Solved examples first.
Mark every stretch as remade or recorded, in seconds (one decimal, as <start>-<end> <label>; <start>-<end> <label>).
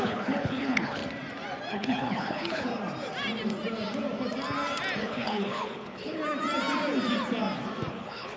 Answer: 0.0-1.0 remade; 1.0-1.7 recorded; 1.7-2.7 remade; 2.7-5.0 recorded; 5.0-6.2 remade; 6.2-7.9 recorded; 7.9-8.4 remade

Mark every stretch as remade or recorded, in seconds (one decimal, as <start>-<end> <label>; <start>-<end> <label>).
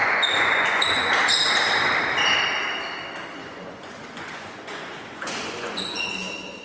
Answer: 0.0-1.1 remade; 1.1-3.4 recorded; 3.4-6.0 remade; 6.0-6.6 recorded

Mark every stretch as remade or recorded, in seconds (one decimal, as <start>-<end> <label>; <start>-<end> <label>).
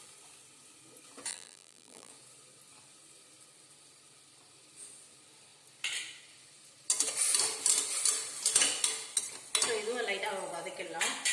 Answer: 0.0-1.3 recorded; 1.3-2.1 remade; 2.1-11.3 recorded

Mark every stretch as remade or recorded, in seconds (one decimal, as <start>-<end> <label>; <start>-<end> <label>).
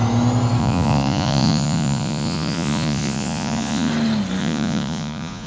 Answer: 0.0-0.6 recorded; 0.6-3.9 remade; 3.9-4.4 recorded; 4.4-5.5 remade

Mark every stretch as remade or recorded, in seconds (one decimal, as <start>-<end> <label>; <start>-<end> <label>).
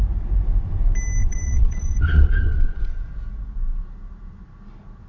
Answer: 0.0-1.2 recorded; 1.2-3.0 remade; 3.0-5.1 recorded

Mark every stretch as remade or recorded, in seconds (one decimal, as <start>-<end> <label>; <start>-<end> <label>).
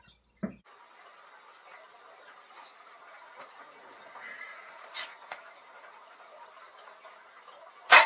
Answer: 0.0-2.7 recorded; 2.7-6.4 remade; 6.4-8.1 recorded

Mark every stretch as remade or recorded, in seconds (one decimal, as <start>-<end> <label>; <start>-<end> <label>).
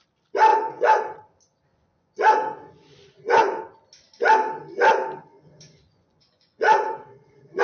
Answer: 0.0-0.5 recorded; 0.5-1.0 remade; 1.0-1.7 recorded; 1.7-3.6 remade; 3.6-5.3 recorded; 5.3-7.6 remade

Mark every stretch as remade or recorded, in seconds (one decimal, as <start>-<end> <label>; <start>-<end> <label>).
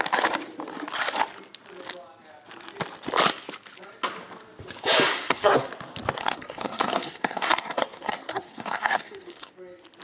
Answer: 0.0-5.1 recorded; 5.1-5.7 remade; 5.7-6.2 recorded; 6.2-9.5 remade; 9.5-10.0 recorded